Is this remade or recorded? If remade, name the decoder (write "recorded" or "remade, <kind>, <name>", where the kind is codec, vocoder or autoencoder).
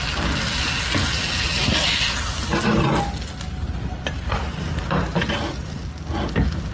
recorded